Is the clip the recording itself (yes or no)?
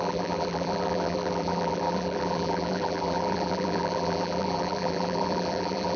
no